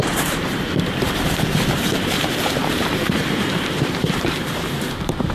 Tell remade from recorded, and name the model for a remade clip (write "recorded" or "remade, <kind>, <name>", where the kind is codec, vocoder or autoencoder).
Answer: remade, vocoder, BigVGAN v2